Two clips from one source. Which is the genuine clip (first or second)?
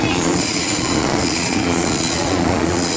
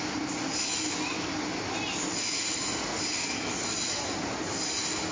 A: second